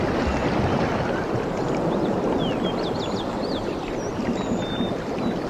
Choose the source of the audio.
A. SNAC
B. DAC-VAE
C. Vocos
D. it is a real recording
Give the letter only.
D